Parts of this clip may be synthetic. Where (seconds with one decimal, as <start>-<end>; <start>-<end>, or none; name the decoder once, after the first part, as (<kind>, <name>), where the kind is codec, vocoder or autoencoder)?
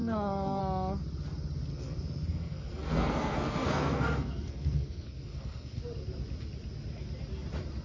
0.0-0.6 (codec, SNAC); 1.7-5.8